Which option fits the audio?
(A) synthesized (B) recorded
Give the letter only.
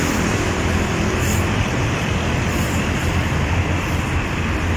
B